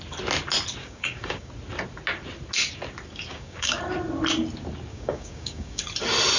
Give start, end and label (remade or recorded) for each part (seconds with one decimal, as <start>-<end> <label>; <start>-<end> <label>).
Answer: 0.0-0.8 recorded; 0.8-1.5 remade; 1.5-3.3 recorded; 3.3-3.8 remade; 3.8-4.9 recorded; 4.9-5.8 remade; 5.8-6.4 recorded